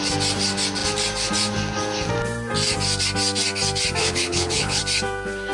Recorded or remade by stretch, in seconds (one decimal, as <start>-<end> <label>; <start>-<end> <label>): 0.0-4.0 recorded; 4.0-4.8 remade; 4.8-5.5 recorded